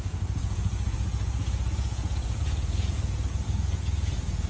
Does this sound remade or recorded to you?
remade